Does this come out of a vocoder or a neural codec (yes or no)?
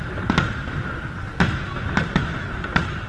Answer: no